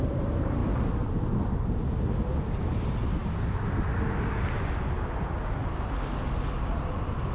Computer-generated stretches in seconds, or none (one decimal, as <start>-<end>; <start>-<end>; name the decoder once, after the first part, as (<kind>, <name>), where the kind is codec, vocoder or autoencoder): none